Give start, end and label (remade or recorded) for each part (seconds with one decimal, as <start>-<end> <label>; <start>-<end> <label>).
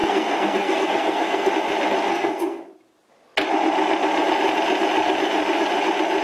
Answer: 0.0-1.5 remade; 1.5-2.1 recorded; 2.1-2.6 remade; 2.6-6.2 recorded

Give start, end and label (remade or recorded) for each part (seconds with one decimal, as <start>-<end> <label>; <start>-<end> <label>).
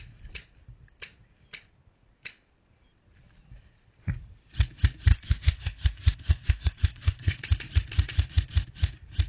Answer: 0.0-5.1 recorded; 5.1-7.4 remade; 7.4-9.3 recorded